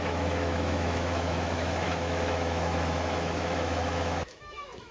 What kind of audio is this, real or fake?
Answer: fake